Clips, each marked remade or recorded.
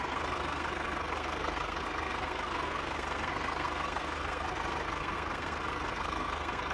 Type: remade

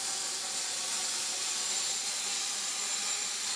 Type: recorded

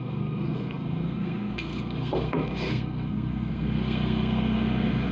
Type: remade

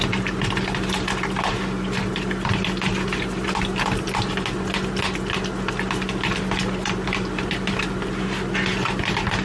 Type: recorded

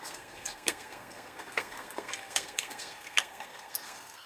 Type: remade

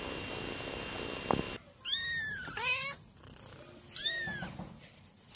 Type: recorded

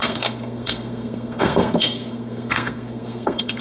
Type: remade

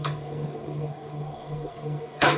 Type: remade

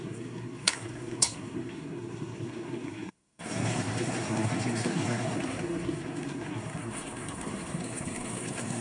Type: remade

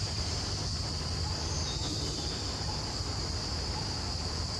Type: recorded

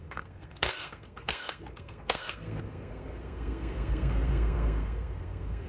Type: remade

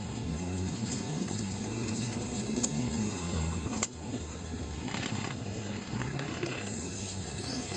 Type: remade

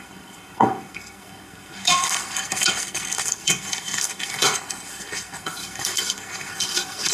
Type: remade